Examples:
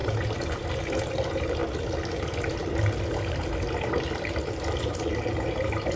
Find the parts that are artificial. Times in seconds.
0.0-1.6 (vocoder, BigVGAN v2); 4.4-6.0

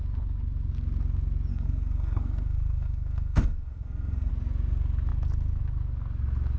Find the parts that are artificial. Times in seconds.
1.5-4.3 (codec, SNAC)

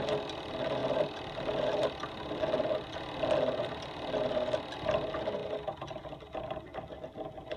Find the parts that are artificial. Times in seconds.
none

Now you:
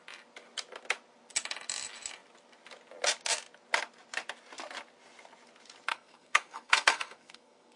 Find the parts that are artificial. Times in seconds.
5.9-7.8 (codec, SNAC)

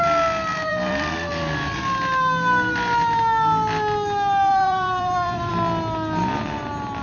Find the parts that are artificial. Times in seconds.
0.5-1.1 (vocoder, BigVGAN v2); 4.5-5.5

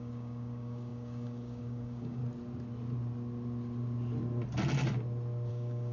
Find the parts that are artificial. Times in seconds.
0.0-2.2 (codec, DAC); 5.5-5.9